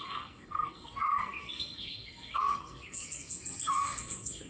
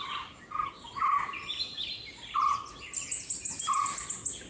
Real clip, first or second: second